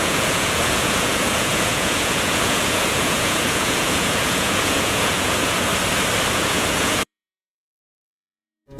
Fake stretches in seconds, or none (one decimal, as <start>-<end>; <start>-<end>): 0.0-5.7; 6.3-8.8